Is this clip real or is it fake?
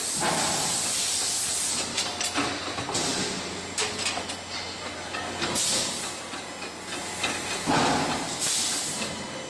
real